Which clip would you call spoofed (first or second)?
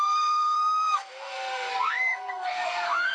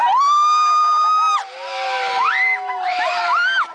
first